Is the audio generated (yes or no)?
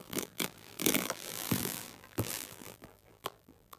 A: yes